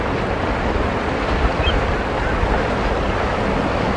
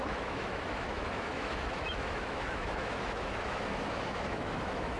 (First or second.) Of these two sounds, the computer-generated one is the second